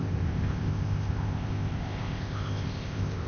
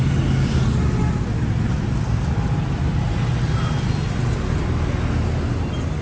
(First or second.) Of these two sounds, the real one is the second